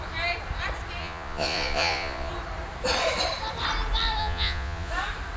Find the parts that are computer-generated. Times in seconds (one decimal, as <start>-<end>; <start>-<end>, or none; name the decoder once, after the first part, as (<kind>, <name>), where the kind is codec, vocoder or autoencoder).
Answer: 1.0-2.3 (vocoder, Vocos); 4.2-4.9